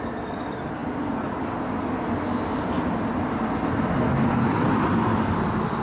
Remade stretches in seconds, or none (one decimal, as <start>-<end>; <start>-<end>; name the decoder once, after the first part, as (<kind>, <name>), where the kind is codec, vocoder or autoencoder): none